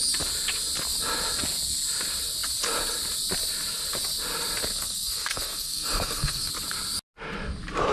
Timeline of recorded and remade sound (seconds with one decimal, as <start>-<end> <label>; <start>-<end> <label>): 0.0-4.7 recorded; 4.7-6.5 remade; 6.5-7.9 recorded